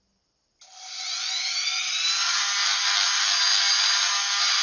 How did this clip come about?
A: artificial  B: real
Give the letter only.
B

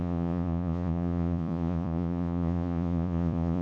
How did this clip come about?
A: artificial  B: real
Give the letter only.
A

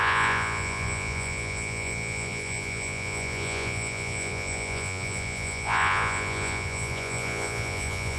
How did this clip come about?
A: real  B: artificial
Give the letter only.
B